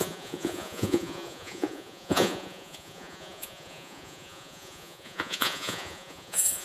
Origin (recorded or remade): remade